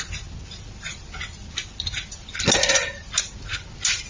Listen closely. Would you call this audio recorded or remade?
recorded